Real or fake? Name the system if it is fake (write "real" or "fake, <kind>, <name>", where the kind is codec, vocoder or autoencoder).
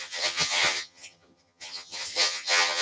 fake, vocoder, HiFi-GAN